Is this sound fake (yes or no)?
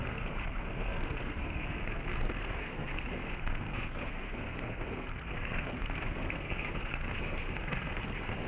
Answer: yes